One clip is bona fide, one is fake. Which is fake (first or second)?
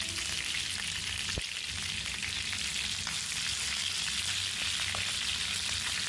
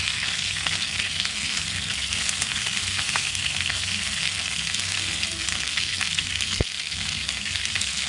second